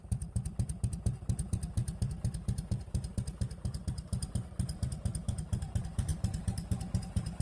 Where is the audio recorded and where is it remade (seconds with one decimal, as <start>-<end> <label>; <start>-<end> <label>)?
0.0-1.8 remade; 1.8-4.3 recorded; 4.3-7.4 remade